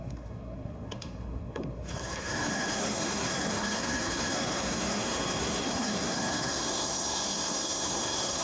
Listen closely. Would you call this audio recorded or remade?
remade